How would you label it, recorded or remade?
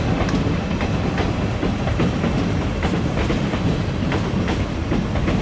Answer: recorded